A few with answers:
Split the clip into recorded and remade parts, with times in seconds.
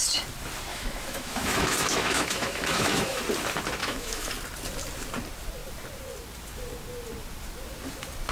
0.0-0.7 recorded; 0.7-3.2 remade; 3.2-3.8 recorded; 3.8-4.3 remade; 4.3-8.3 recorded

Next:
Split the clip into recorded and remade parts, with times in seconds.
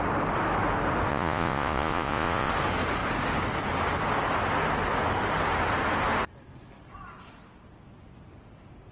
0.0-1.1 recorded; 1.1-2.5 remade; 2.5-8.9 recorded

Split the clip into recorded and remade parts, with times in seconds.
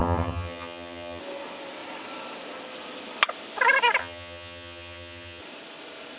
0.0-1.2 remade; 1.2-4.0 recorded; 4.0-5.4 remade; 5.4-6.2 recorded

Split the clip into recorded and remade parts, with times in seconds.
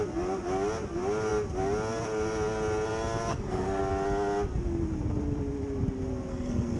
0.0-3.3 recorded; 3.3-3.8 remade; 3.8-6.3 recorded; 6.3-6.8 remade